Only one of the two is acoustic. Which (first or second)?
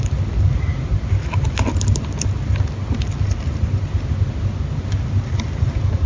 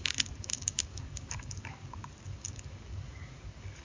first